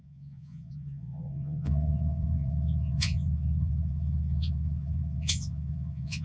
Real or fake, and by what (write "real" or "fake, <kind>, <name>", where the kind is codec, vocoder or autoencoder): fake, vocoder, Vocos